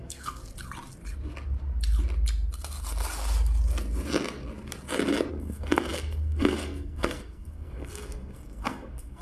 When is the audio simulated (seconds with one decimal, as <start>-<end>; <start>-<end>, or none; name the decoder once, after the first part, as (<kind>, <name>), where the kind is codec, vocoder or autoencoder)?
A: 0.0-0.4 (codec, SNAC); 5.3-9.2